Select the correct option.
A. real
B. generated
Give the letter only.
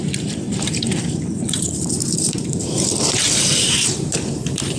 B